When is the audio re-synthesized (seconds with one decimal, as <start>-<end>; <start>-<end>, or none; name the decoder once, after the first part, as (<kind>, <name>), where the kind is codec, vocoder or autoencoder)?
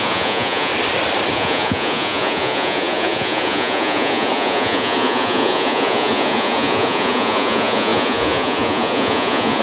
0.0-0.7 (vocoder, Vocos); 1.3-9.6